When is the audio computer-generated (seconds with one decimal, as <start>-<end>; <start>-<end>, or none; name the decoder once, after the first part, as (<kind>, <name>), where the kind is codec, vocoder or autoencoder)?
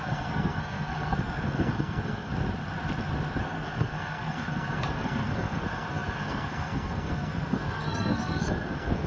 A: 0.0-2.3 (codec, SNAC); 3.4-9.1